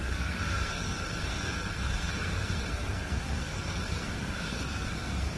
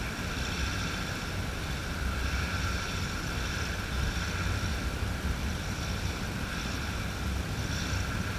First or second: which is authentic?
second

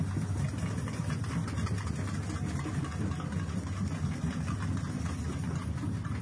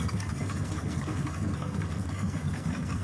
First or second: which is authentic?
first